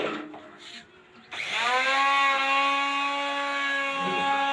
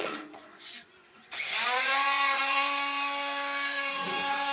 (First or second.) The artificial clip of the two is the second